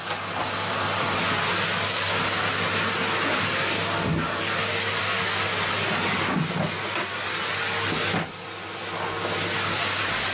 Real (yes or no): yes